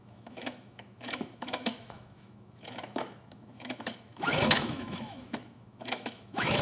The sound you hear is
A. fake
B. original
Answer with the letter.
A